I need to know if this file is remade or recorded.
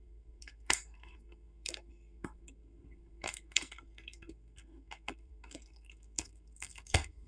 remade